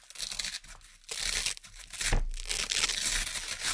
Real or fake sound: real